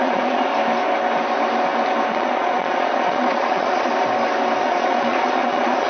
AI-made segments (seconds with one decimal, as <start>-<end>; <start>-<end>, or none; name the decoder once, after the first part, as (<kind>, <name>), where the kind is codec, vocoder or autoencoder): 0.0-0.5 (vocoder, Vocos); 2.1-3.9; 4.6-5.9

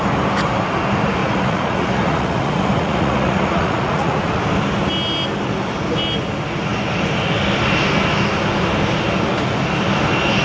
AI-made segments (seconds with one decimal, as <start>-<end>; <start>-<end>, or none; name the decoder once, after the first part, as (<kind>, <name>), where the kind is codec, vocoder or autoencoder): 1.2-4.4 (vocoder, Vocos)

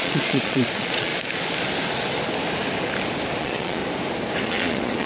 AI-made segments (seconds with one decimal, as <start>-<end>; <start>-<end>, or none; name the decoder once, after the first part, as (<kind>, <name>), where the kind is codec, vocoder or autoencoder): 0.0-1.1 (vocoder, Vocos); 3.4-3.8; 4.4-5.1

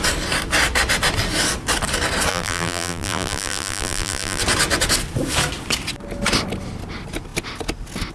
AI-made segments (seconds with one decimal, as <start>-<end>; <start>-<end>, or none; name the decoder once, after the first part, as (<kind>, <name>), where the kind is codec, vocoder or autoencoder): 2.3-4.4 (vocoder, BigVGAN v2)

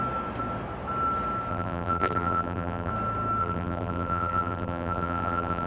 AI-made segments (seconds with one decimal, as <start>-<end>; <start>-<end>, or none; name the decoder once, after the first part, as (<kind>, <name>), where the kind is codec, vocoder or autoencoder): 1.5-2.9 (vocoder, BigVGAN v2); 3.4-5.7